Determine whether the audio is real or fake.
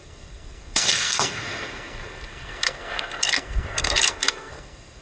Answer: fake